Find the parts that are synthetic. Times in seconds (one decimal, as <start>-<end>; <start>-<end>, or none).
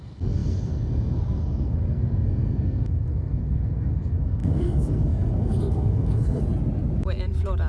0.0-6.4